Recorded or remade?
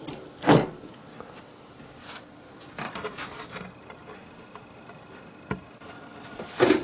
recorded